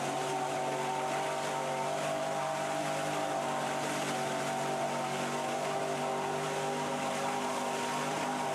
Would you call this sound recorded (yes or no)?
yes